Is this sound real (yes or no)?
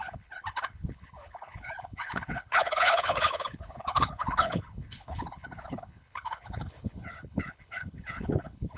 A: no